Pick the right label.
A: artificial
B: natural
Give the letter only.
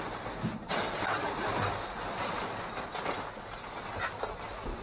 B